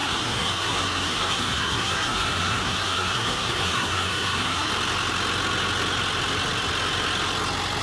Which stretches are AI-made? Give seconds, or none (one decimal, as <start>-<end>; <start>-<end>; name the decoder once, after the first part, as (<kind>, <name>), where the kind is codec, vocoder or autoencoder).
0.0-4.7 (codec, SNAC)